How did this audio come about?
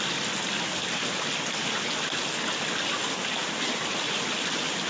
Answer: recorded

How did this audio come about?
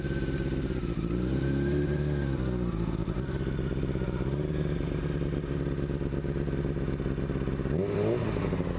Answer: recorded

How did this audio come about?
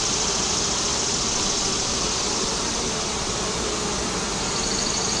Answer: recorded